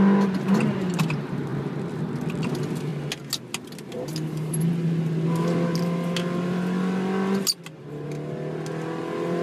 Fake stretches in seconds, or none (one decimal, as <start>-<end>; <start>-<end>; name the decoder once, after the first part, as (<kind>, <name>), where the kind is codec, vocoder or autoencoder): none